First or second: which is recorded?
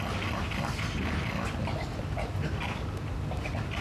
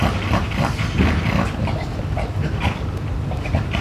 first